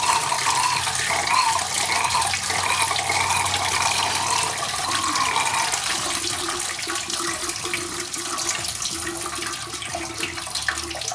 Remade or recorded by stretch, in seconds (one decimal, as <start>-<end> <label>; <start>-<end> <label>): 0.0-11.1 recorded